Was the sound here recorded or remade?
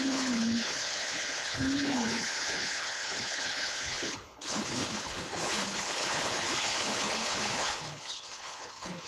remade